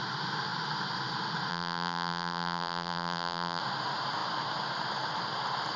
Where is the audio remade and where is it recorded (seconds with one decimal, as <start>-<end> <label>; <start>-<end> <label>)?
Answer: 0.0-1.5 recorded; 1.5-3.6 remade; 3.6-5.8 recorded